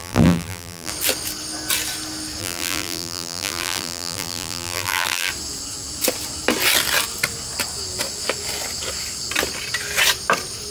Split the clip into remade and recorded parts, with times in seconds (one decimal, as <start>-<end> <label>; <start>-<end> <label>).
0.0-0.9 remade; 0.9-2.4 recorded; 2.4-5.3 remade; 5.3-10.7 recorded